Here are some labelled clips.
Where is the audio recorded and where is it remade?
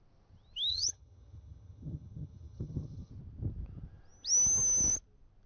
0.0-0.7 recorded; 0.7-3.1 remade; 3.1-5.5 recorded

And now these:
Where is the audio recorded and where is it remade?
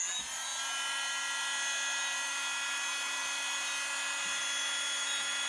0.0-5.5 recorded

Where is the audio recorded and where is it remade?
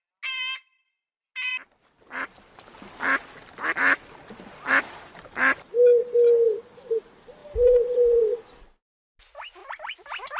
0.0-7.4 recorded; 7.4-9.1 remade; 9.1-9.6 recorded; 9.6-10.4 remade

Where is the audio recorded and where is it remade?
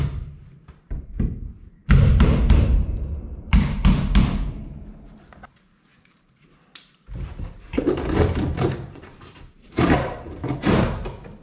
0.0-11.4 remade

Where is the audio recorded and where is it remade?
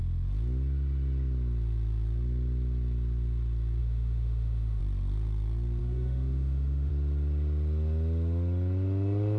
0.0-3.8 recorded; 3.8-4.8 remade; 4.8-5.8 recorded; 5.8-6.9 remade; 6.9-9.4 recorded